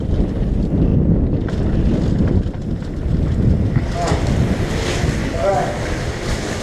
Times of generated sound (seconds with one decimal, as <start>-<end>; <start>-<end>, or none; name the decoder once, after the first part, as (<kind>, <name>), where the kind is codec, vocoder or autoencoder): 5.2-5.7 (codec, DAC)